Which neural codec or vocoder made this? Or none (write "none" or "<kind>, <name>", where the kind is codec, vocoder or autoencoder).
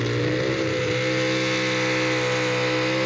none